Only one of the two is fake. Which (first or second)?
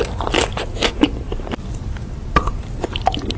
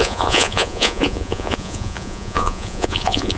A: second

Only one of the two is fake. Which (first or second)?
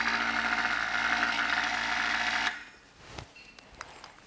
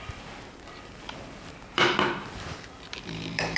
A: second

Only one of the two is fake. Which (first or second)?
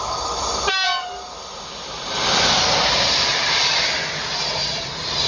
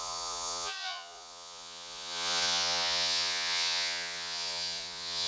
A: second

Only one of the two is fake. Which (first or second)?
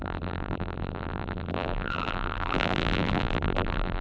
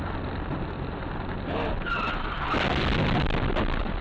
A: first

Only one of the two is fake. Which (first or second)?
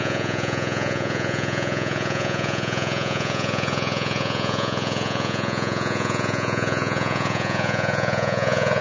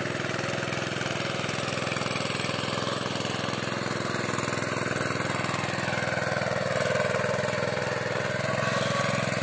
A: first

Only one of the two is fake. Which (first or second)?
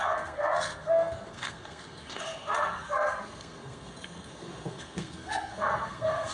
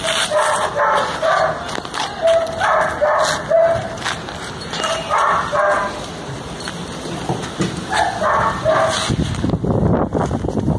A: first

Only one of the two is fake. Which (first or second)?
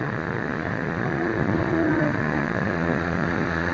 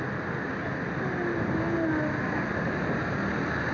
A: first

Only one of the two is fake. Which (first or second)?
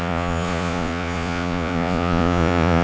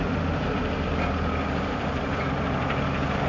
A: first